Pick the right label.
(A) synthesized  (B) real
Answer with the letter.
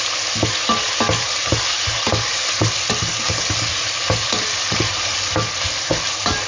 B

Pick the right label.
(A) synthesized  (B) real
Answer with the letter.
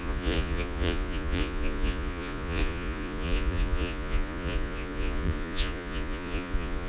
A